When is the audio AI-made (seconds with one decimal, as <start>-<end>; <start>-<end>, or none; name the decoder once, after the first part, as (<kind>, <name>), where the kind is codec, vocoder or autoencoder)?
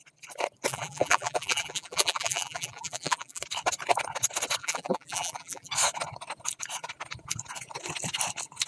0.7-3.4 (vocoder, BigVGAN v2); 4.6-5.7